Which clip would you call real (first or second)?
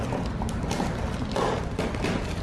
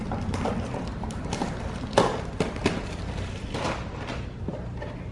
first